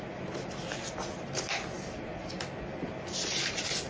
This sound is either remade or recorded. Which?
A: recorded